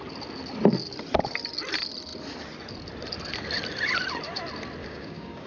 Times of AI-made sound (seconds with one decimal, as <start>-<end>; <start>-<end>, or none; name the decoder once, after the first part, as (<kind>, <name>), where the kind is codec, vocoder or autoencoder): 4.8-5.5 (codec, DAC)